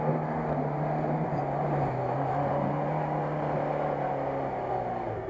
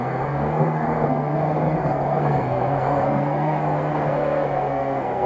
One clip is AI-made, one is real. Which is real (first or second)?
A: first